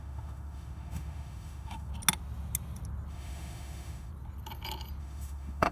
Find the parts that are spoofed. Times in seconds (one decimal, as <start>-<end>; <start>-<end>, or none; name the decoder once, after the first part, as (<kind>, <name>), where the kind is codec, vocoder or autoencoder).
0.0-1.9 (autoencoder, DAC-VAE); 3.1-4.1; 5.0-5.7

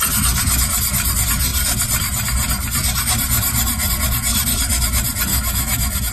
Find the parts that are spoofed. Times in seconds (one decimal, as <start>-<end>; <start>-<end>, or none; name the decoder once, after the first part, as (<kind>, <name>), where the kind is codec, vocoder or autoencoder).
5.3-6.1 (autoencoder, DAC-VAE)

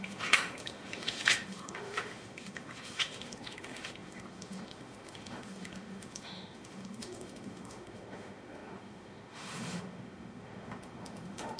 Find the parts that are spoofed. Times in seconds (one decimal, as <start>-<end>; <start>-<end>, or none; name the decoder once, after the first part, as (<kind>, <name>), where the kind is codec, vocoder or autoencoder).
0.0-11.6 (autoencoder, DAC-VAE)

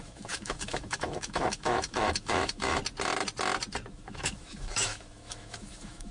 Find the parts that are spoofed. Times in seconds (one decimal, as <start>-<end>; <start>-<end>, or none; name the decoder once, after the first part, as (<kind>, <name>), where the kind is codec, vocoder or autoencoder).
0.0-2.8 (autoencoder, DAC-VAE); 3.9-6.1

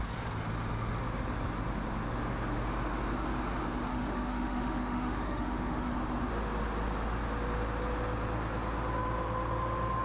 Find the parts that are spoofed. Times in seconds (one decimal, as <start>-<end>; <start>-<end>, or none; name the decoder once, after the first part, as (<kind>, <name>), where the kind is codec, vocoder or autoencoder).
3.9-5.9 (autoencoder, DAC-VAE)

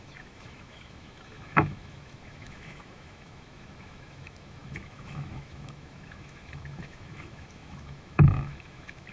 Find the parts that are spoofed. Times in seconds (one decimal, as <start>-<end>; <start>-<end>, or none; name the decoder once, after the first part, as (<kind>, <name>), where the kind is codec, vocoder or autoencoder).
0.0-9.1 (autoencoder, DAC-VAE)

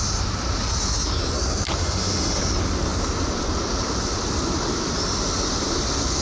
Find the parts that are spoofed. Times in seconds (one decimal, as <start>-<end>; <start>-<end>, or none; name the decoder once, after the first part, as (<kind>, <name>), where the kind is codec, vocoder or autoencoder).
1.8-2.4 (autoencoder, DAC-VAE)